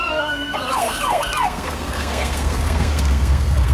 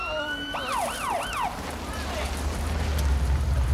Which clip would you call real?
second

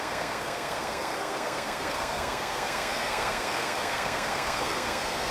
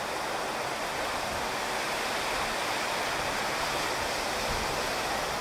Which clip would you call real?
second